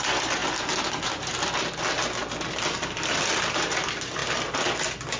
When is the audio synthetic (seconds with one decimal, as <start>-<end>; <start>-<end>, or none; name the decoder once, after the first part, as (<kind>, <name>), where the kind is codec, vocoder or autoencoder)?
none